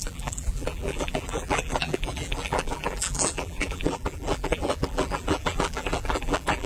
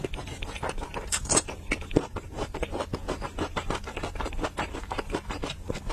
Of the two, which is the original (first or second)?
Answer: second